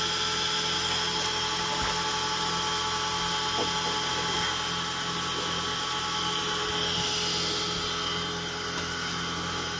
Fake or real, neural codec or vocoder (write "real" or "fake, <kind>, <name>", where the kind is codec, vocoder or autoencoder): real